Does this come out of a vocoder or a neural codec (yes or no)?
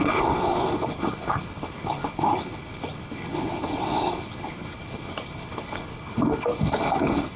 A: yes